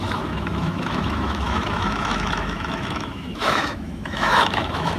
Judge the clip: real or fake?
fake